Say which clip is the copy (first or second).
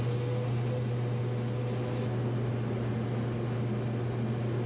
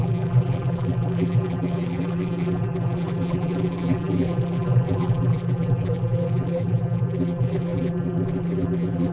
second